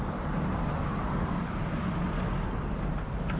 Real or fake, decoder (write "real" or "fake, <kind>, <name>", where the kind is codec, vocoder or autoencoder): real